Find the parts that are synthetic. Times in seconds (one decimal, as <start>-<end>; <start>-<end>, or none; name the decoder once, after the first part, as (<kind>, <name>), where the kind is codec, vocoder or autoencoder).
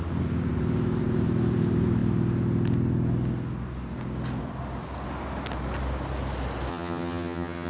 6.7-7.7 (vocoder, HiFi-GAN)